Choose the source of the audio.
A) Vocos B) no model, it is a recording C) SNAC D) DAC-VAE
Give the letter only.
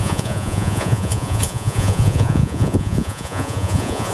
A